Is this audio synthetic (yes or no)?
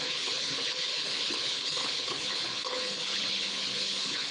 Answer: yes